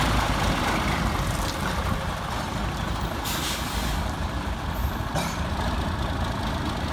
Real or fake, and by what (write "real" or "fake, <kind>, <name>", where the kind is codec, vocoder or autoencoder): real